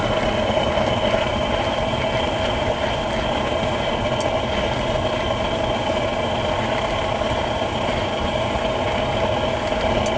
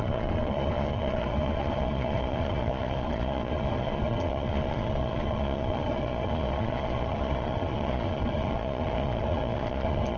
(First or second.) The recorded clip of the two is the first